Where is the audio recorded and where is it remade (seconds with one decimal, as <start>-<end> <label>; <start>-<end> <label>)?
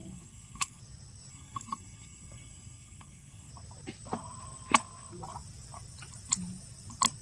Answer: 0.0-0.8 remade; 0.8-1.3 recorded; 1.3-3.5 remade; 3.5-7.2 recorded